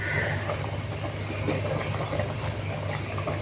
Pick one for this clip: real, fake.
real